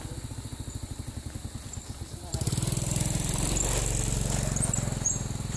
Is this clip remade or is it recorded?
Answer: recorded